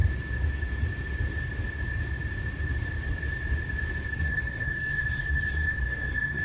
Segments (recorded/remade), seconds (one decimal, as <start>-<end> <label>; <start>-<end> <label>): 0.0-4.0 recorded; 4.0-6.4 remade